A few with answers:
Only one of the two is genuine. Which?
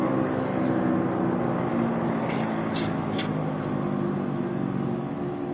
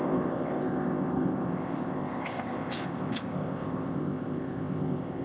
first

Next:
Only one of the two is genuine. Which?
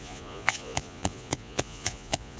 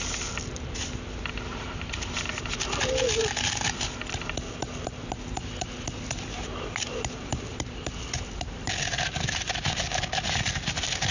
second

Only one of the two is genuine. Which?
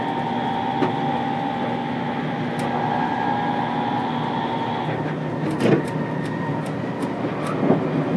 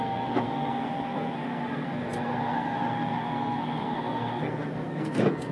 first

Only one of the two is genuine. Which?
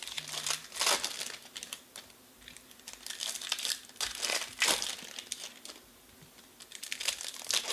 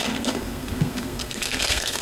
first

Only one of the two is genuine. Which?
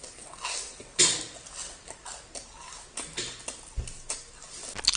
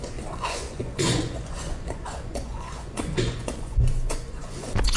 first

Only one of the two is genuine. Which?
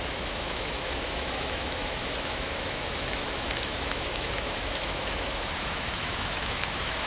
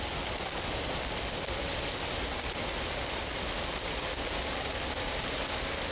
second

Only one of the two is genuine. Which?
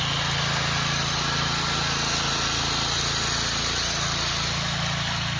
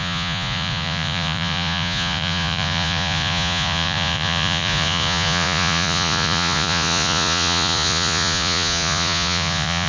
first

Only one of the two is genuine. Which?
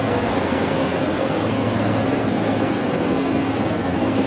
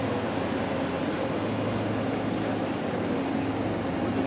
second